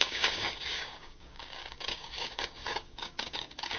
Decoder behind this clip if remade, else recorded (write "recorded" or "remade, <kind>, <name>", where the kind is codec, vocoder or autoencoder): remade, codec, DAC